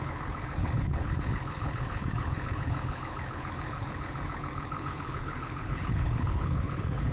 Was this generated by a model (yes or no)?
yes